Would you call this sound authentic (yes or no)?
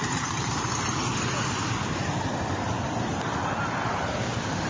no